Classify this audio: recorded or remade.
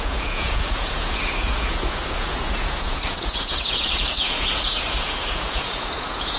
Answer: remade